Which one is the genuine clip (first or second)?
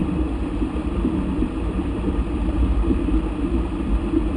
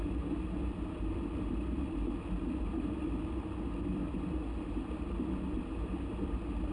second